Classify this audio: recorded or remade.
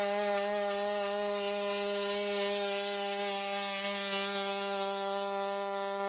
recorded